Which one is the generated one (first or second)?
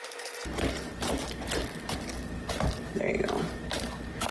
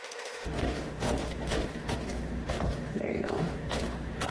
second